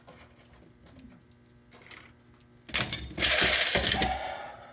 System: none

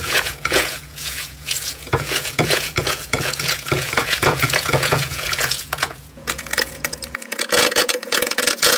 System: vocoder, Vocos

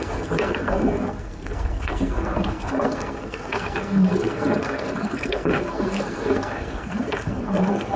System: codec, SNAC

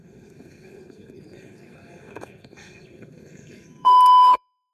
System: codec, SNAC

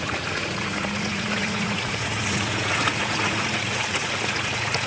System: vocoder, Vocos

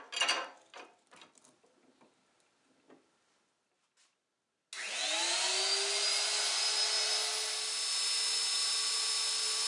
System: none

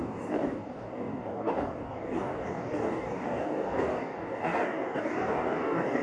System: codec, DAC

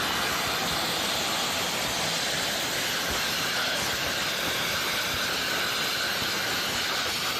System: none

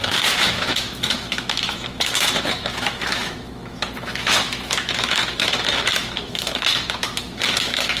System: autoencoder, DAC-VAE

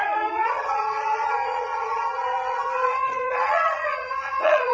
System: vocoder, Vocos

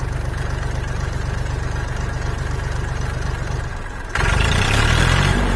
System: vocoder, BigVGAN v2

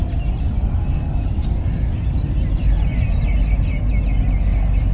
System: none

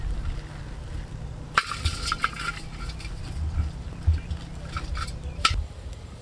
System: none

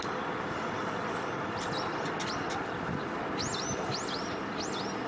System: none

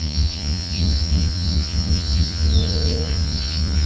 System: vocoder, Vocos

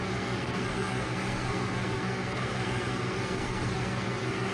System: codec, SNAC